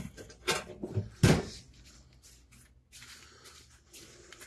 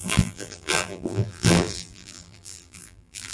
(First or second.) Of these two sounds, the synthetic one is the second